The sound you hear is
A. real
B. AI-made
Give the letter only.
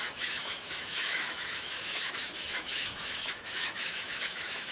B